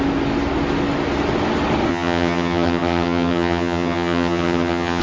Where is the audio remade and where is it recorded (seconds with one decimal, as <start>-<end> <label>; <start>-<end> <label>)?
0.0-1.9 recorded; 1.9-5.0 remade